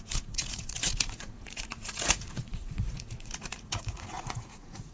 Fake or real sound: fake